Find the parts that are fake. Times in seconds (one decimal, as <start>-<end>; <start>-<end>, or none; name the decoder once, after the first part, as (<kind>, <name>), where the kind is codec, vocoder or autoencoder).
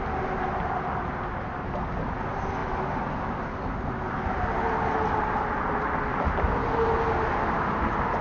none